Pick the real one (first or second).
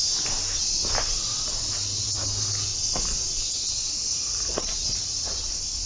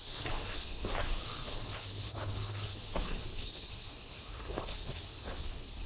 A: first